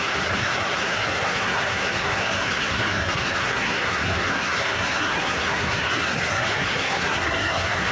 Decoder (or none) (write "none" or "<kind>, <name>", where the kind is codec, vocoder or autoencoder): codec, SNAC